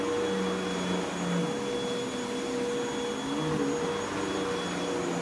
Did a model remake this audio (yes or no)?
no